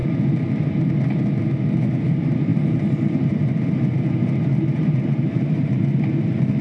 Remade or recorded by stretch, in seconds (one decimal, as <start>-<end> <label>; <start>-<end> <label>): 0.0-1.8 recorded; 1.8-6.6 remade